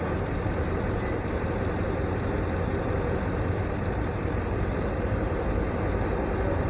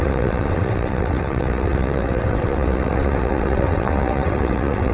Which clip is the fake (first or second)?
second